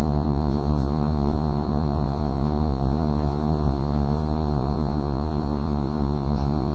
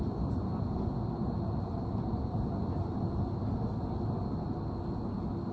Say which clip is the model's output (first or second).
first